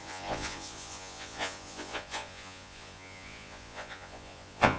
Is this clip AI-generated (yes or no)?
yes